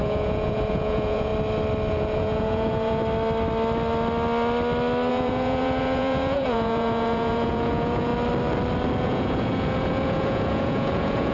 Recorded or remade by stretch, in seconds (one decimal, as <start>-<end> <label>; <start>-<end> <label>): 0.0-1.3 remade; 1.3-1.9 recorded; 1.9-3.0 remade; 3.0-5.1 recorded; 5.1-8.1 remade; 8.1-9.0 recorded; 9.0-11.3 remade